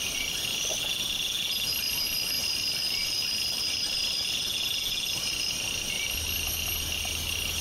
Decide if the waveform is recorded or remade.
recorded